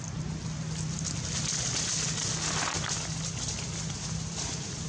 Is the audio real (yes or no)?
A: yes